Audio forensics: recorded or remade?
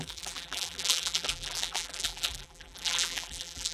remade